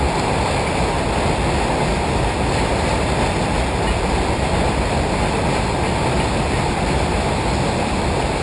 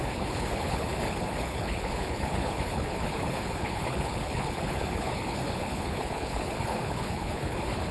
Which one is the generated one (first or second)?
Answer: second